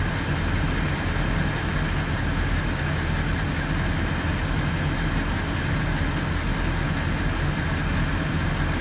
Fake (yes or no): no